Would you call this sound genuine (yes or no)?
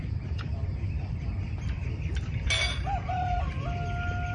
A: yes